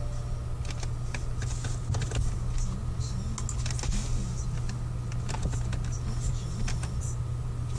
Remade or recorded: recorded